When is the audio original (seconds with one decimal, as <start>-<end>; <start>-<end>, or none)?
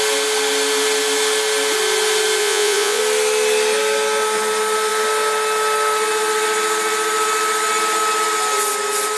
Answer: 0.0-2.4; 3.0-9.2